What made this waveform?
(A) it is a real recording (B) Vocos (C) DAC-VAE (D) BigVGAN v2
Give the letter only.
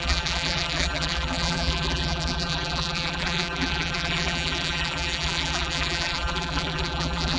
D